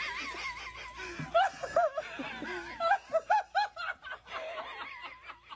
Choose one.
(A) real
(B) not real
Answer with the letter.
A